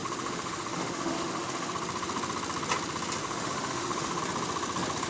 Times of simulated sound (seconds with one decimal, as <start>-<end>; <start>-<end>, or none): 0.0-1.7; 3.2-4.2